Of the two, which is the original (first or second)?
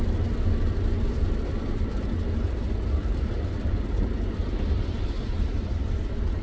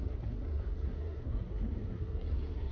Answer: first